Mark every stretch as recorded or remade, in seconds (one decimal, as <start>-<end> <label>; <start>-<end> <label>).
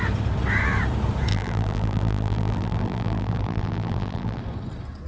0.0-1.3 recorded; 1.3-4.4 remade; 4.4-5.1 recorded